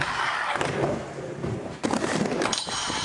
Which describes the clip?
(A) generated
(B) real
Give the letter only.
B